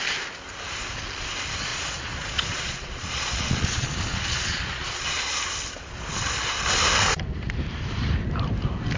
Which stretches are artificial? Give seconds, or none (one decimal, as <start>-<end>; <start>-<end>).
1.7-5.4

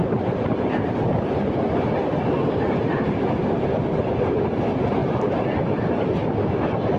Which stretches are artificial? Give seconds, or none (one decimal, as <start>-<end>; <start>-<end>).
none

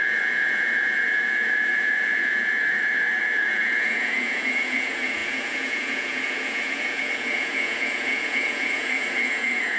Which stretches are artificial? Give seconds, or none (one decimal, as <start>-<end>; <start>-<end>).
0.0-2.6; 3.2-9.8

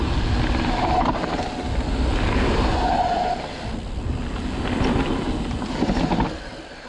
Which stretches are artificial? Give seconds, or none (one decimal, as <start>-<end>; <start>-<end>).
2.7-3.4

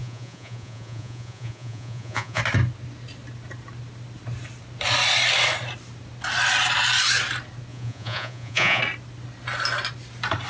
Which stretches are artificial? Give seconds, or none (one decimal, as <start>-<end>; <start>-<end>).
0.0-2.4; 7.7-8.8

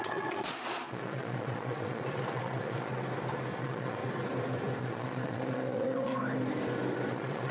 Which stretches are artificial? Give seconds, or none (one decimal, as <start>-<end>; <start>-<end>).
0.0-2.9; 3.6-4.0; 4.8-6.1; 7.1-7.5

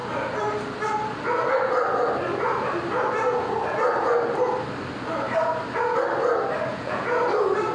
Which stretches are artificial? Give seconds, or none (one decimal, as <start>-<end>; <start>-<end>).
6.7-7.2